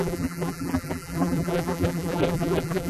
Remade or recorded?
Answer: remade